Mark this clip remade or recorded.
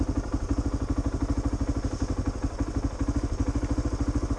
recorded